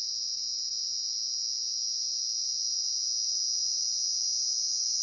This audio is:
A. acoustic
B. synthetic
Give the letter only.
B